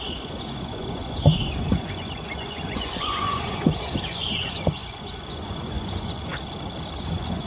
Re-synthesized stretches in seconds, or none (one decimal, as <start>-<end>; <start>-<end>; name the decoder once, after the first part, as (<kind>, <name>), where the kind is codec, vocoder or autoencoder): 0.0-6.3 (vocoder, Vocos); 7.0-7.5